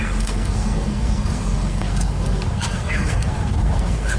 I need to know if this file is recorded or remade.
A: remade